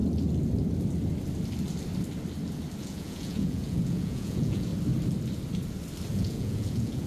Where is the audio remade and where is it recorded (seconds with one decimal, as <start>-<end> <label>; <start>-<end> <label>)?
0.0-2.8 recorded; 2.8-4.7 remade; 4.7-6.1 recorded; 6.1-7.1 remade